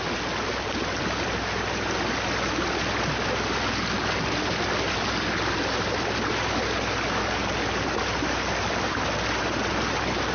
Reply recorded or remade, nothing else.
recorded